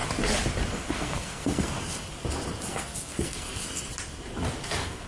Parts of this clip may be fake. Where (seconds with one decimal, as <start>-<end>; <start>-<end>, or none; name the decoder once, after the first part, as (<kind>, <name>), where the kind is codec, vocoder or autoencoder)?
0.7-2.1 (codec, SNAC); 2.7-3.9; 4.6-5.1